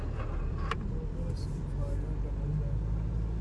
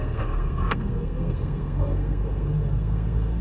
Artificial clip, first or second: second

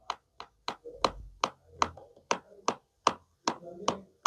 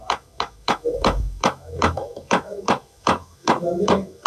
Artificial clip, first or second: second